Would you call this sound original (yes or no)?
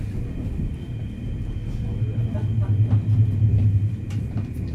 yes